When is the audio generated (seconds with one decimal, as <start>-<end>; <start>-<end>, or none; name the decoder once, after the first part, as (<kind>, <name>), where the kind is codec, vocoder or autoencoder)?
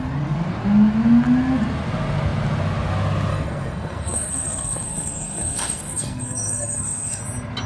3.3-7.2 (codec, SNAC)